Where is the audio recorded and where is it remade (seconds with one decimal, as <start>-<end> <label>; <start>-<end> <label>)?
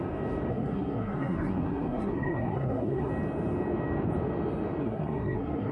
0.0-0.5 recorded; 0.5-3.1 remade; 3.1-4.8 recorded; 4.8-5.7 remade